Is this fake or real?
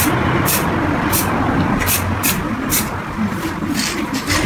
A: fake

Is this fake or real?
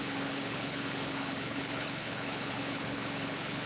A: fake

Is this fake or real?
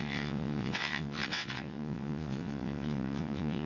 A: fake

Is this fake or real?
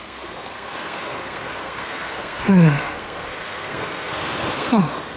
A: fake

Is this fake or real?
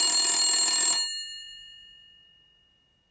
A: real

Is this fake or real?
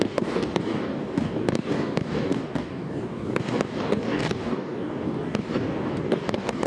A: fake